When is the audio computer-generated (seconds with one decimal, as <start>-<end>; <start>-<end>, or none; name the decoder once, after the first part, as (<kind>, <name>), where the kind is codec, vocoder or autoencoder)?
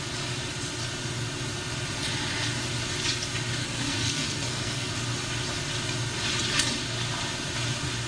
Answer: 3.6-4.9 (codec, SNAC)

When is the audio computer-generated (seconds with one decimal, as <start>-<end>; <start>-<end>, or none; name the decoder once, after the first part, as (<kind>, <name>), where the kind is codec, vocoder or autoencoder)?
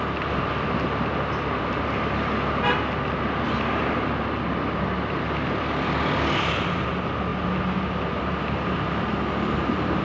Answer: none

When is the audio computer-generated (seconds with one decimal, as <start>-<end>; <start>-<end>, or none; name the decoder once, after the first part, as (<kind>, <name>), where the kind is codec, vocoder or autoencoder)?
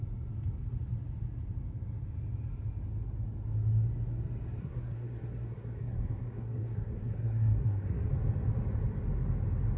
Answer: 4.6-8.1 (codec, SNAC)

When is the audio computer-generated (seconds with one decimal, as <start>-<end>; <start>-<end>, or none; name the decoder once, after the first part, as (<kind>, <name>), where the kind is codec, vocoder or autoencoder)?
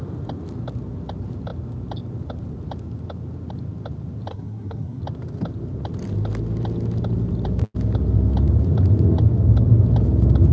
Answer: 4.3-5.0 (codec, SNAC)